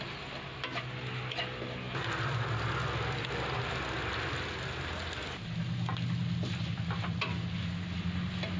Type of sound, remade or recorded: recorded